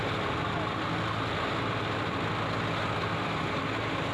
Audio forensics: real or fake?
real